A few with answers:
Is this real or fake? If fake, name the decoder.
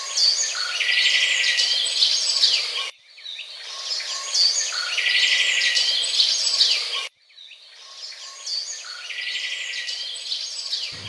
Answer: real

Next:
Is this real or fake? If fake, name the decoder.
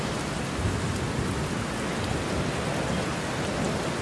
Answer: real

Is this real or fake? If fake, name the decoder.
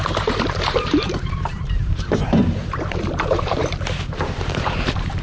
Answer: fake, vocoder, BigVGAN v2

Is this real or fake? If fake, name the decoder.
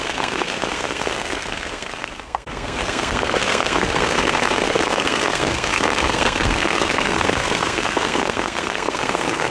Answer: fake, codec, SNAC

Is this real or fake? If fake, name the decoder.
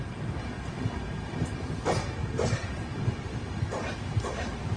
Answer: real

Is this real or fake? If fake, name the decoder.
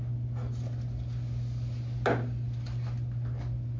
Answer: real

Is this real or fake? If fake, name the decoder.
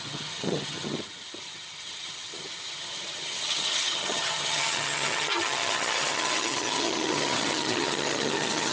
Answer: fake, vocoder, HiFi-GAN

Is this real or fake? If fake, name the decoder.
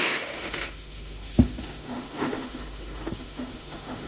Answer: fake, autoencoder, DAC-VAE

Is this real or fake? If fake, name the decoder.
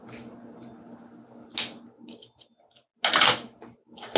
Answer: real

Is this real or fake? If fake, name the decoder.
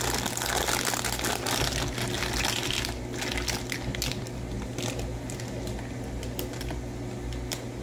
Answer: real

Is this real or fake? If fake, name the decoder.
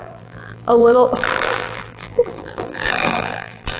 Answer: fake, vocoder, BigVGAN v2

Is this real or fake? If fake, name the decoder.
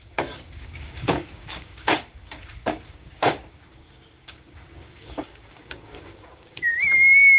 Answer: fake, codec, DAC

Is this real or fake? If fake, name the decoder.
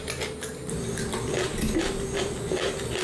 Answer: real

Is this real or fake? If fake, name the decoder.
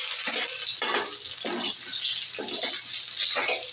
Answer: real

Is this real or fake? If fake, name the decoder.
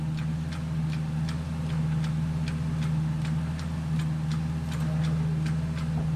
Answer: real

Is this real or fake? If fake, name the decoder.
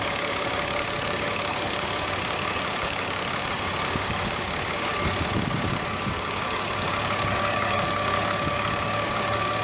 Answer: fake, codec, DAC